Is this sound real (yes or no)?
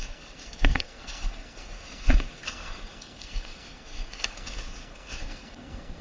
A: no